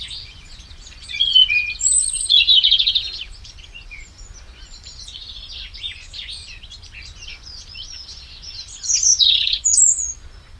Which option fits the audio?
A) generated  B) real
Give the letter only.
A